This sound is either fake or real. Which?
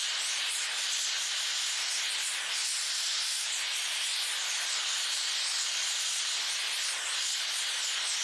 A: real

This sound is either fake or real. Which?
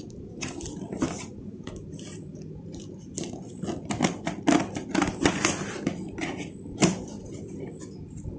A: fake